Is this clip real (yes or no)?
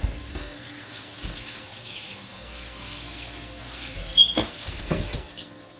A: no